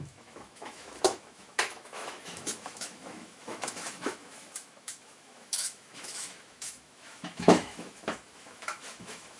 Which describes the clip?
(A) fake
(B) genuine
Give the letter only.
A